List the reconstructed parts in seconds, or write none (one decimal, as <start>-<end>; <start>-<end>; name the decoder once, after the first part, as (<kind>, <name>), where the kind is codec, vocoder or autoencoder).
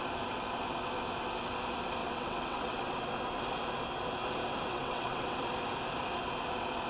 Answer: 2.0-3.1 (vocoder, WaveNeXt); 4.7-5.4